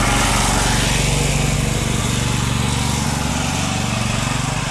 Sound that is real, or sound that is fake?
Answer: real